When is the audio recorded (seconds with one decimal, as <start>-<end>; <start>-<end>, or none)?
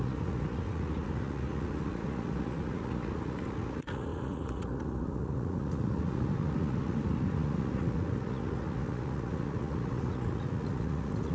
none